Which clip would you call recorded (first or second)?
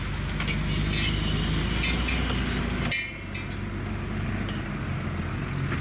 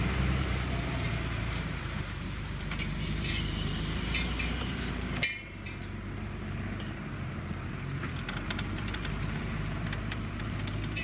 first